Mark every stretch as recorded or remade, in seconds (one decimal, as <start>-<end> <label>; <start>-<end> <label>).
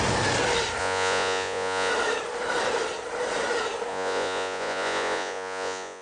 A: 0.0-0.8 recorded; 0.8-1.9 remade; 1.9-3.9 recorded; 3.9-6.0 remade